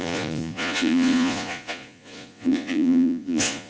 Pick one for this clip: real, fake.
fake